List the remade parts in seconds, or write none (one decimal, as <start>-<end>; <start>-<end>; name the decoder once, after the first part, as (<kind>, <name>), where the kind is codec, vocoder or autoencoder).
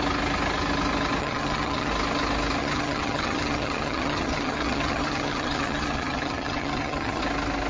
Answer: 1.2-1.9 (vocoder, HiFi-GAN); 2.6-7.2